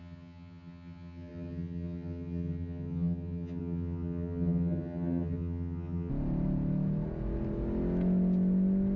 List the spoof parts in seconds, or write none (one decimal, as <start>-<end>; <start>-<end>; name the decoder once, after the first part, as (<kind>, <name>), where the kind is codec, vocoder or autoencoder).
0.0-6.1 (vocoder, HiFi-GAN)